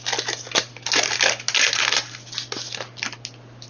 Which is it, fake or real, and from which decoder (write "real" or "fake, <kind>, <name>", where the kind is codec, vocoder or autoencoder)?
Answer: real